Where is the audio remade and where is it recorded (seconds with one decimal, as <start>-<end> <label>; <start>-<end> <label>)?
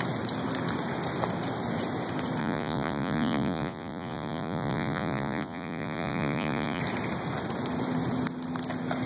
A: 0.0-2.4 recorded; 2.4-6.8 remade; 6.8-9.1 recorded